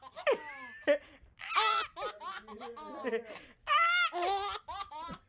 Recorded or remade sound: recorded